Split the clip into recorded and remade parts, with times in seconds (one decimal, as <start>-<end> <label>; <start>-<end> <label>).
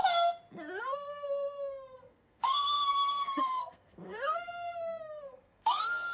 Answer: 0.0-0.8 recorded; 0.8-6.1 remade